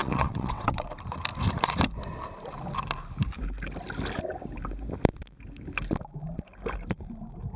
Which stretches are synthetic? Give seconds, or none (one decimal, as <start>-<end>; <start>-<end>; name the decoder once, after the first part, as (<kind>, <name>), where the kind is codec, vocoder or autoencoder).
0.0-0.9 (vocoder, WaveNeXt)